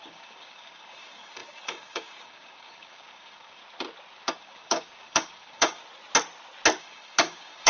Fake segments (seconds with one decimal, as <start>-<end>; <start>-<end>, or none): 0.0-3.6; 4.3-5.8; 6.8-7.7